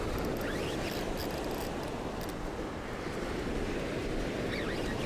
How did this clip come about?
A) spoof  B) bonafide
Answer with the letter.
B